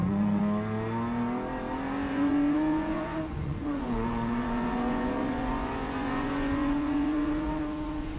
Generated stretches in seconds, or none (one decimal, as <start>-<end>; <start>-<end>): 0.0-0.4; 2.1-8.2